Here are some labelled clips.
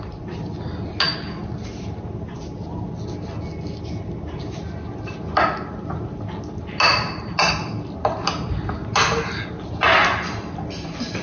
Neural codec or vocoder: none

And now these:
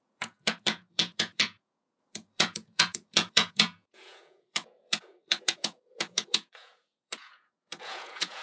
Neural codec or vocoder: vocoder, Vocos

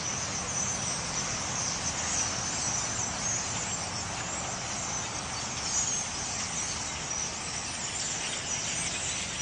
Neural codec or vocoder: none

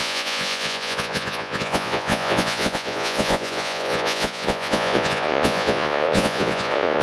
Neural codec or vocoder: vocoder, Vocos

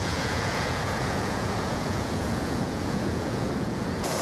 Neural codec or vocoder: vocoder, Vocos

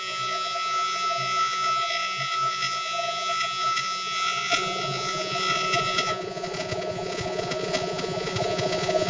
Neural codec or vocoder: vocoder, Vocos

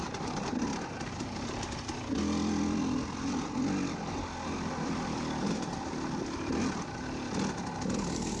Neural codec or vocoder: none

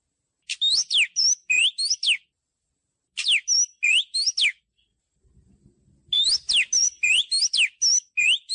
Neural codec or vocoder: none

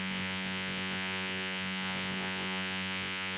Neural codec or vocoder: vocoder, Vocos